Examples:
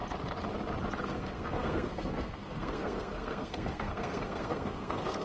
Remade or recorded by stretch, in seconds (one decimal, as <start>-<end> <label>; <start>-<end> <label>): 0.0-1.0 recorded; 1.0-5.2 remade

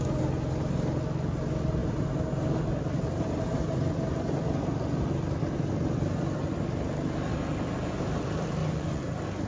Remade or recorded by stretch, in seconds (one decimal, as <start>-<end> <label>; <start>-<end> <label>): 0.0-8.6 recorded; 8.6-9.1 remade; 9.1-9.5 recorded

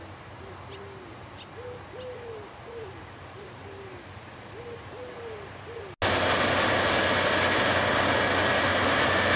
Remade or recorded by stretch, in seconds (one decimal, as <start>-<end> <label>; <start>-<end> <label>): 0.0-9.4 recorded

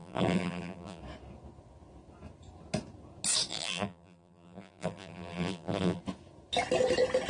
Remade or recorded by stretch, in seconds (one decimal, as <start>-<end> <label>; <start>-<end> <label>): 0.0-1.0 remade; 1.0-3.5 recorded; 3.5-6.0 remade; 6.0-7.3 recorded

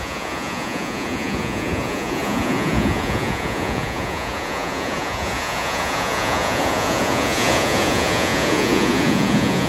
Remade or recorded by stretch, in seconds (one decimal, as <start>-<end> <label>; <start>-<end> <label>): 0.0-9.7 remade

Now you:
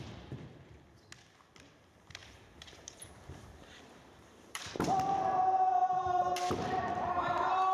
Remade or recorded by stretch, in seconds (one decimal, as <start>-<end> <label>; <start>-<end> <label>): 0.0-2.2 recorded; 2.2-4.7 remade; 4.7-5.8 recorded; 5.8-7.1 remade; 7.1-7.7 recorded

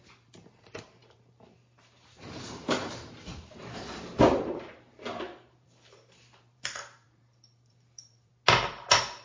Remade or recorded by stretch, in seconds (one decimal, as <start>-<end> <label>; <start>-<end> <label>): 0.0-8.3 remade; 8.3-9.2 recorded